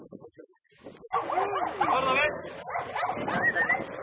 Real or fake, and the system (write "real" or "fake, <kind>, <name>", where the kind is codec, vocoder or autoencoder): real